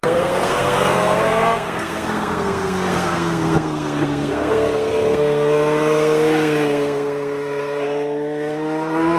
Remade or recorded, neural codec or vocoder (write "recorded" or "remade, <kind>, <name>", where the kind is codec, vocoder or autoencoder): remade, codec, SNAC